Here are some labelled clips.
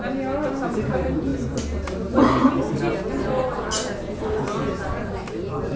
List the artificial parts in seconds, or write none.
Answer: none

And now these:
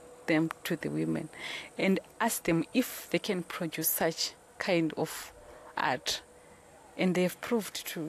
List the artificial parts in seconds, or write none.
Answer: none

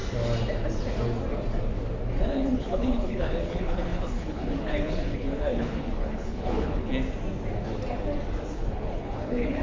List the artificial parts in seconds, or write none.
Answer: 2.2-6.9 (codec, HILCodec); 8.5-9.6